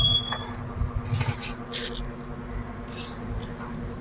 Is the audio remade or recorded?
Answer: recorded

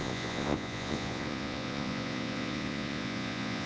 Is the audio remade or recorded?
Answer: remade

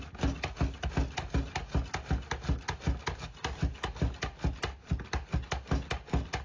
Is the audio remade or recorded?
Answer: recorded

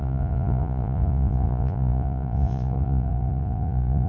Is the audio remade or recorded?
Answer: remade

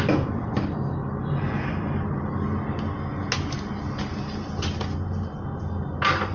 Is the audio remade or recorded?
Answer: recorded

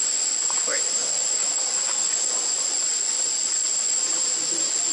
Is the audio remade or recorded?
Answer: remade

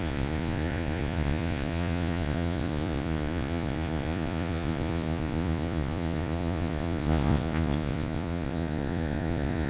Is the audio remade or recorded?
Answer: remade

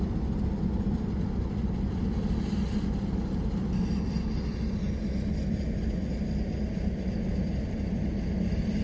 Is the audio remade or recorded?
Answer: recorded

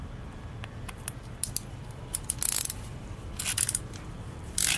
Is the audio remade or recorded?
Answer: recorded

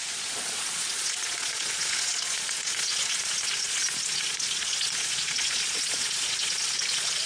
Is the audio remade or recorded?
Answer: remade